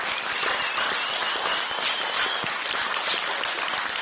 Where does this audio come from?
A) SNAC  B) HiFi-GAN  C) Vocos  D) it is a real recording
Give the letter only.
D